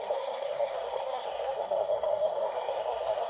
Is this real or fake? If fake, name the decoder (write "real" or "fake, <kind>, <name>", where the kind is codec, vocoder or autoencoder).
fake, codec, SNAC